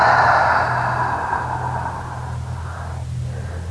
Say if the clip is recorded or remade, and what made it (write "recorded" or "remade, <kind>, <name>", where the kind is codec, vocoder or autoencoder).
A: recorded